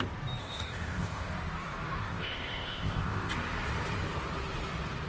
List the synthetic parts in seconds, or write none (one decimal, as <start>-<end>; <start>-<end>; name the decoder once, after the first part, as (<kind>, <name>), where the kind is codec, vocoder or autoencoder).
0.4-1.3 (codec, ZipCodec); 2.0-3.3